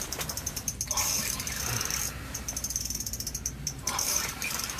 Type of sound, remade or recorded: remade